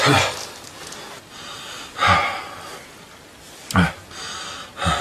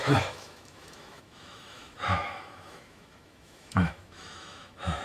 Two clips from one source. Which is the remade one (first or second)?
second